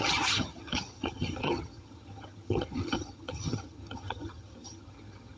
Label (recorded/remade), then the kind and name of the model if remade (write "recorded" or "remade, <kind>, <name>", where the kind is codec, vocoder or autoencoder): remade, vocoder, HiFi-GAN